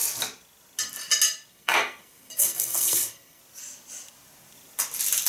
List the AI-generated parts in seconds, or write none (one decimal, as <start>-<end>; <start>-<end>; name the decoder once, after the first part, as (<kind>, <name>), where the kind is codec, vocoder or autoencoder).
1.5-3.4 (codec, SNAC)